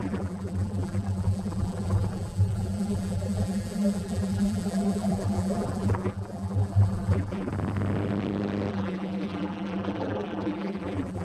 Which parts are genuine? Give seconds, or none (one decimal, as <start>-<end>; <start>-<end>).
7.5-8.7